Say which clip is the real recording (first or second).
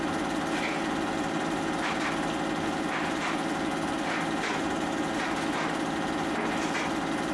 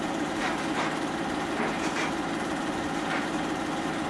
first